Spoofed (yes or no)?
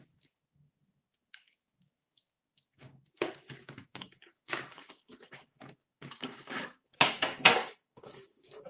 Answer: yes